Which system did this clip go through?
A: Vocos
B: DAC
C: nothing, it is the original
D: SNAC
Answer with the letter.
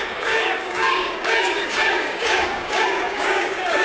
B